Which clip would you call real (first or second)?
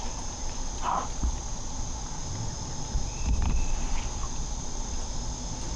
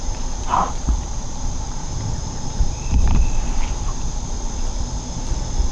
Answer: first